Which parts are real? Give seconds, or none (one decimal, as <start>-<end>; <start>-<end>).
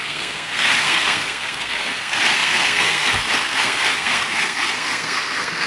none